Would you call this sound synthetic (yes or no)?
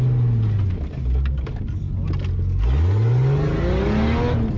no